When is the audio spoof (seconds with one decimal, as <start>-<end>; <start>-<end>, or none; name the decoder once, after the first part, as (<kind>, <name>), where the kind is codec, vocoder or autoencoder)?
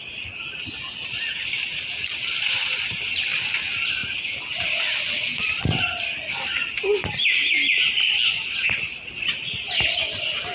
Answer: none